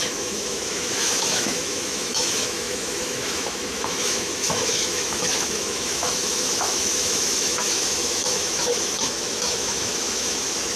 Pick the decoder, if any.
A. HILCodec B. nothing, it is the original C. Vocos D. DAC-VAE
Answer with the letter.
D